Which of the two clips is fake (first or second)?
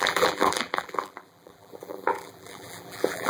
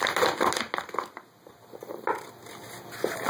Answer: first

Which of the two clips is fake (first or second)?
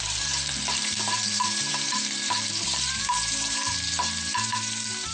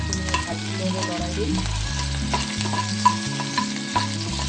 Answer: first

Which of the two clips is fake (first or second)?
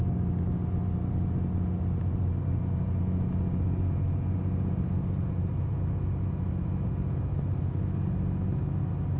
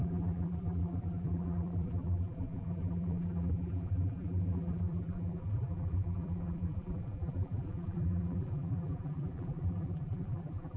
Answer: second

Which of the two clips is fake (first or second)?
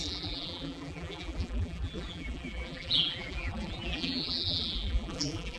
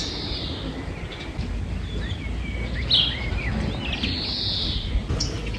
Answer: first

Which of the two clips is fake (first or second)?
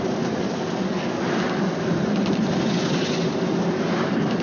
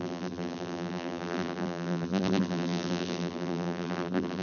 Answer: second